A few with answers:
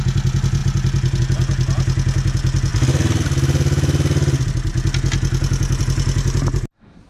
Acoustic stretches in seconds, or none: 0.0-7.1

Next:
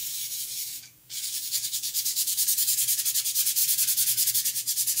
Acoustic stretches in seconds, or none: 3.0-5.0

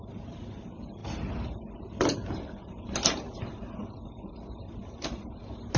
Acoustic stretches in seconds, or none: 0.0-5.8

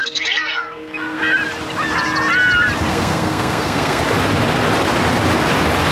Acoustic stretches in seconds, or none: 1.2-2.9; 4.0-5.9

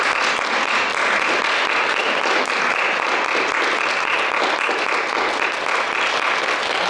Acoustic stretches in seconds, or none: 0.0-6.9